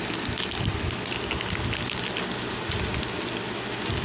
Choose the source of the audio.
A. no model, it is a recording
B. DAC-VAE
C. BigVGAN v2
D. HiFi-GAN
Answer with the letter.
A